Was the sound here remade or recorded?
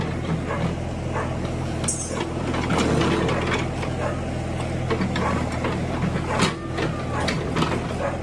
recorded